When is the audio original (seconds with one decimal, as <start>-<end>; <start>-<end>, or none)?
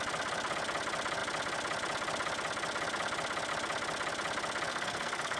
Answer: 0.0-4.7